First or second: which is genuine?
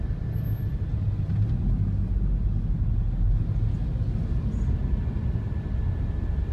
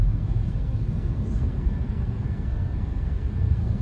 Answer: first